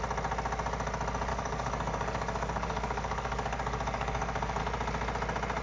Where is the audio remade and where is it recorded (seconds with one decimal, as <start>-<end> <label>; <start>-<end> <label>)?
0.0-1.3 recorded; 1.3-4.6 remade; 4.6-5.6 recorded